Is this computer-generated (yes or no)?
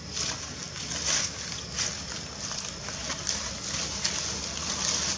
no